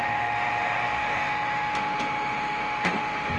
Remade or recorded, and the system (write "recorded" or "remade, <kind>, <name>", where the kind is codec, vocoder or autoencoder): remade, autoencoder, DAC-VAE